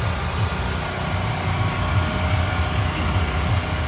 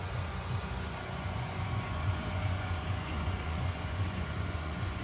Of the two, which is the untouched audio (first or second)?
first